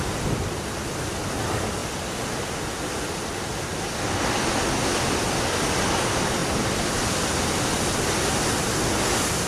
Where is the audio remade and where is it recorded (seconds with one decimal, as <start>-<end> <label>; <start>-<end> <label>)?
0.0-6.4 recorded; 6.4-7.6 remade; 7.6-9.5 recorded